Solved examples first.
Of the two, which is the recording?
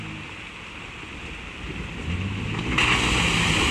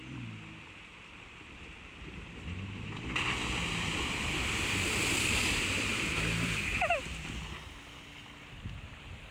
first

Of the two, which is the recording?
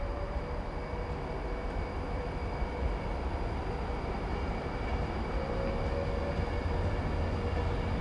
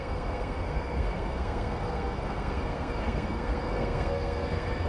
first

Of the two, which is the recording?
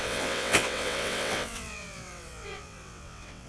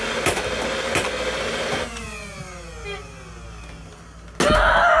second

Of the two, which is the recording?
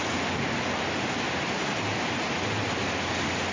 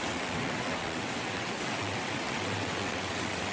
first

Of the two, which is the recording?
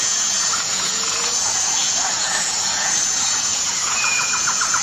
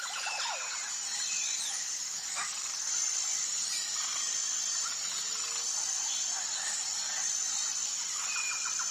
second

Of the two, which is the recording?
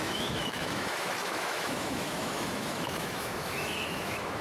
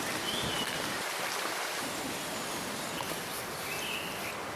second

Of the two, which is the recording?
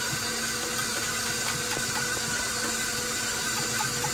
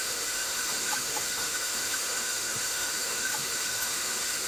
first